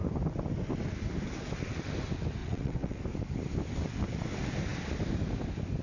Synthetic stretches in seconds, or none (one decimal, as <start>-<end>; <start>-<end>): 2.4-3.0